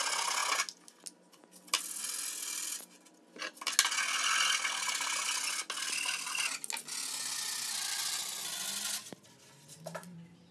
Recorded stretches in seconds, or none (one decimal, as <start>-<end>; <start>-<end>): 0.0-10.5